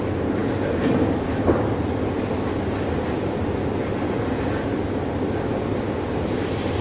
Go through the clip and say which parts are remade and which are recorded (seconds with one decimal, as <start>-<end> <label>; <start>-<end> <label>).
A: 0.0-6.8 recorded